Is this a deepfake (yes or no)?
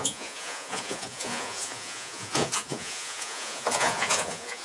yes